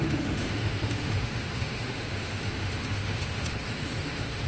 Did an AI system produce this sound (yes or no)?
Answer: yes